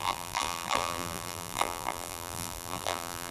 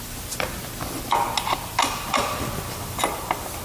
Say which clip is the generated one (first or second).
first